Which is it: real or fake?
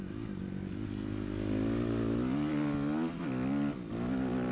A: real